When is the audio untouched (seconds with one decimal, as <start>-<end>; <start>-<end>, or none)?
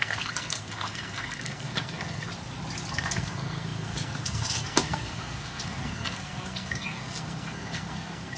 2.3-2.9